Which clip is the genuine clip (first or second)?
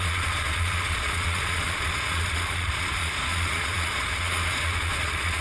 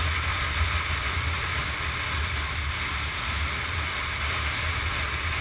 second